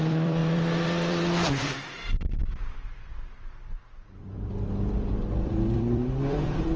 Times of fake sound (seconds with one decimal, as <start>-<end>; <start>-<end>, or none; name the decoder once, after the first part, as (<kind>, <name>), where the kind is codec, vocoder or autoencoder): 0.0-6.8 (vocoder, BigVGAN v2)

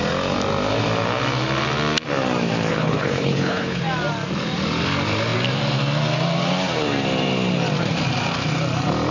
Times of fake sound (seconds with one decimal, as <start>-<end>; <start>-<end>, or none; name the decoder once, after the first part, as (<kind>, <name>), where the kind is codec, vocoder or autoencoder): 2.7-3.8 (codec, HILCodec)